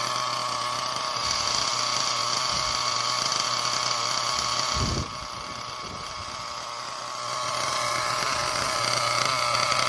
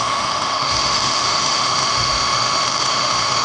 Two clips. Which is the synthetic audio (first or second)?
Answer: second